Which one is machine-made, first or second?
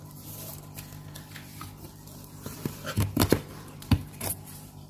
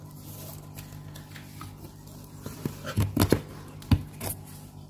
first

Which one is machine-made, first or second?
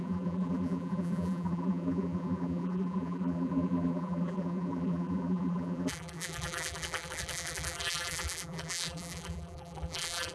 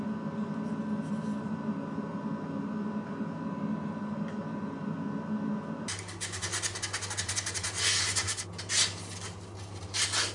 first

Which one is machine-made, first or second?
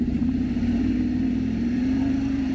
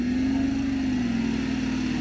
first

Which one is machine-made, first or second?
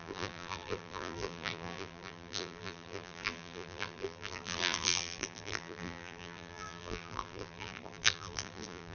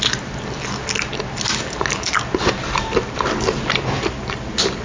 first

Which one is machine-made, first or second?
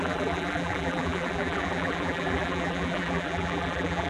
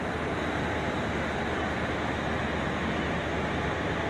first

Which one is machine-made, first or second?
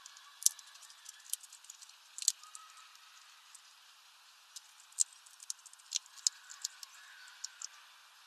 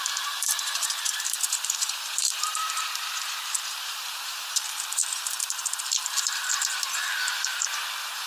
second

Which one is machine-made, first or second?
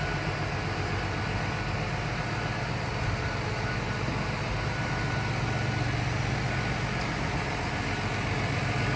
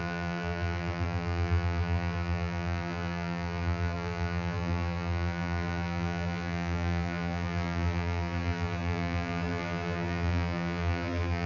second